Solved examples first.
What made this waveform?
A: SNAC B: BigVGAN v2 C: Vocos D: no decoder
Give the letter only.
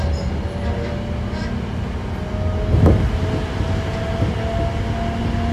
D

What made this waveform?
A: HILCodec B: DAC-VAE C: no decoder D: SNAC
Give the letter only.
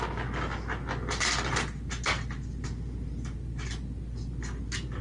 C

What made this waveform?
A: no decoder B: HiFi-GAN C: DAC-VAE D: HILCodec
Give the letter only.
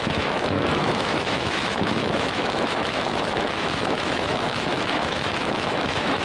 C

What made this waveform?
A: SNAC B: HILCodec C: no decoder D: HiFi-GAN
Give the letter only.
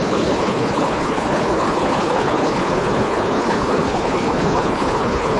B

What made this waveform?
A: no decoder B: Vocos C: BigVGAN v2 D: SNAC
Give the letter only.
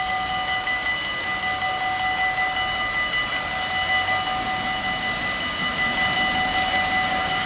A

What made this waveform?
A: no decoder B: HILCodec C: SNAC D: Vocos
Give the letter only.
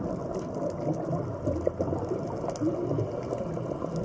A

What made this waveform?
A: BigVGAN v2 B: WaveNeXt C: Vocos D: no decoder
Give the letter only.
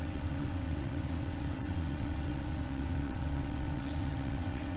B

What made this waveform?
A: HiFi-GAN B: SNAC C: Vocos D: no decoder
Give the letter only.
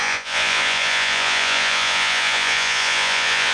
C